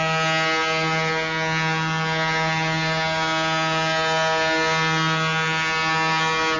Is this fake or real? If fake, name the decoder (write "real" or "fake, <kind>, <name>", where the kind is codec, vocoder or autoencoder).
real